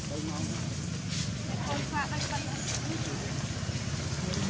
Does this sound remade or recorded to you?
recorded